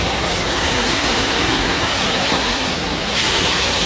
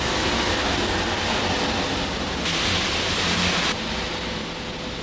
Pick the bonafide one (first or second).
second